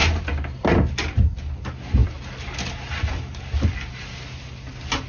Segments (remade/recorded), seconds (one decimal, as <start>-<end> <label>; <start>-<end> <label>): 0.0-5.1 recorded